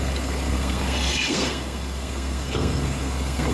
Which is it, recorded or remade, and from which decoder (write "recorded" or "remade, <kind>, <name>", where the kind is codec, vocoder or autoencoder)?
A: remade, codec, SNAC